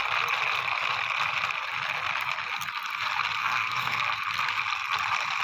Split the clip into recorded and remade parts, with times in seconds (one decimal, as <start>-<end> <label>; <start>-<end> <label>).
0.0-3.4 recorded; 3.4-4.0 remade; 4.0-5.4 recorded